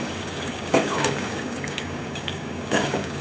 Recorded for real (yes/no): no